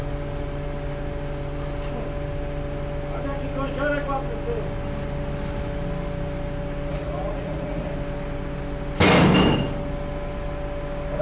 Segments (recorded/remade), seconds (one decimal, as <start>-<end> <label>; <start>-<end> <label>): 0.0-6.9 recorded; 6.9-7.9 remade; 7.9-11.2 recorded